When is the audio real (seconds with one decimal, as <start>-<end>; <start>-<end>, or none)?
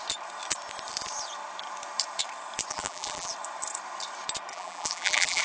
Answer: 0.0-2.7; 3.3-4.5